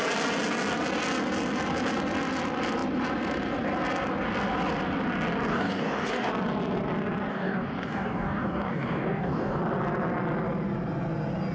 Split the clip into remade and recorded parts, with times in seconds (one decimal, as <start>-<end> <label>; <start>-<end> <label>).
0.0-5.5 recorded; 5.5-6.3 remade; 6.3-7.3 recorded; 7.3-9.6 remade; 9.6-11.5 recorded